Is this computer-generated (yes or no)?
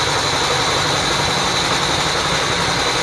no